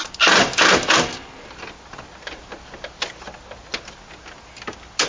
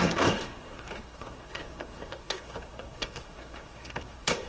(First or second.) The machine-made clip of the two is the second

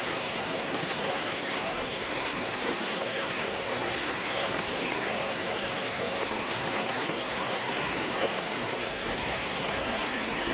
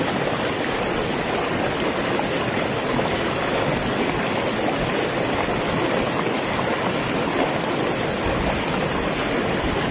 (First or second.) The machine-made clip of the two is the first